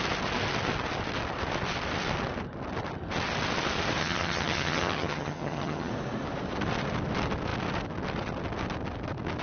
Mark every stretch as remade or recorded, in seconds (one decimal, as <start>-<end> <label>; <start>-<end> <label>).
0.0-4.0 recorded; 4.0-5.9 remade; 5.9-9.4 recorded